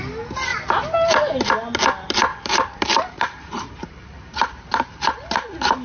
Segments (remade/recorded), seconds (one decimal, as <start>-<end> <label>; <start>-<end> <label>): 0.0-2.3 recorded; 2.3-5.3 remade; 5.3-5.8 recorded